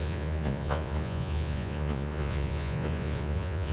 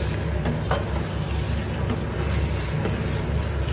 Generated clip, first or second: first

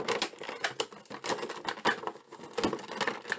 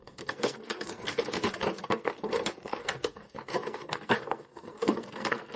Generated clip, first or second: second